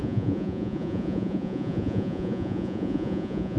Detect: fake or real fake